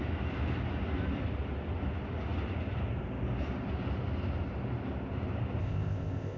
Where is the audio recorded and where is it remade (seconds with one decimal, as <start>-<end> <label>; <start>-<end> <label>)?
0.0-5.6 recorded; 5.6-6.4 remade